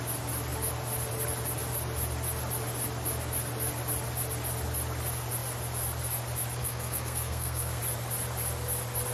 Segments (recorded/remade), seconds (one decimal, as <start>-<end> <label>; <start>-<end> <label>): 0.0-6.6 recorded; 6.6-7.8 remade; 7.8-9.1 recorded